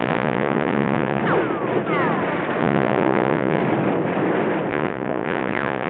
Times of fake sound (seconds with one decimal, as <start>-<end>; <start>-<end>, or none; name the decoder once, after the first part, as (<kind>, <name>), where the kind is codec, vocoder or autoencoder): 0.0-1.2 (vocoder, Vocos); 2.6-3.6; 4.7-5.9